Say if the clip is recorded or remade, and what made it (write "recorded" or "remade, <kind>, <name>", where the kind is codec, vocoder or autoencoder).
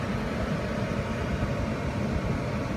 recorded